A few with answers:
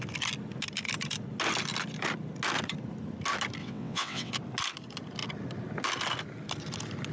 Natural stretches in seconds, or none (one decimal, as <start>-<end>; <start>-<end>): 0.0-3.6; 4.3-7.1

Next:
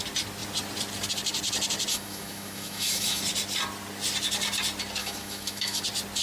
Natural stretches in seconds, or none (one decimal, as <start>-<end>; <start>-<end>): 0.0-1.9; 3.2-5.0; 5.8-6.2

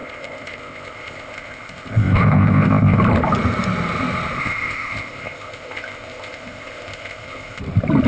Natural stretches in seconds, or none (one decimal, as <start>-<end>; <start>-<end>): 3.0-4.4; 7.6-8.1

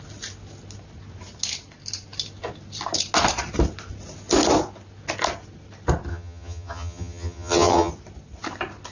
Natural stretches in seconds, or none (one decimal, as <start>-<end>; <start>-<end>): 0.0-6.1; 7.9-8.9

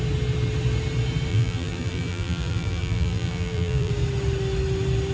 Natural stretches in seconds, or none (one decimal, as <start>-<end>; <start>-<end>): 0.0-1.3; 3.9-5.1